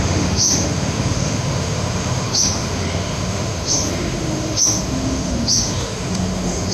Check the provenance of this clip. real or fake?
fake